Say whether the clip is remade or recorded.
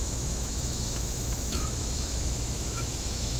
remade